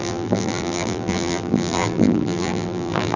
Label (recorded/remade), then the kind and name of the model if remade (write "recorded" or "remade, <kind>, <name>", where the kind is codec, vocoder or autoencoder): remade, vocoder, BigVGAN v2